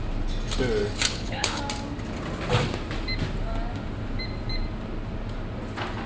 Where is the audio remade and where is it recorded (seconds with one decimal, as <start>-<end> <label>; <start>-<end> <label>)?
0.0-1.1 recorded; 1.1-1.6 remade; 1.6-6.1 recorded